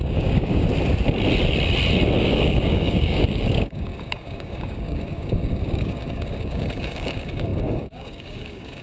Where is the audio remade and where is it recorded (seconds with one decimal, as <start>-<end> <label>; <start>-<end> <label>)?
0.0-0.7 remade; 0.7-2.2 recorded; 2.2-8.8 remade

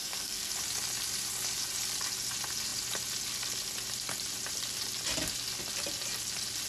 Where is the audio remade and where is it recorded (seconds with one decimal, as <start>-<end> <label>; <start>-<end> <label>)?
0.0-0.5 remade; 0.5-6.7 recorded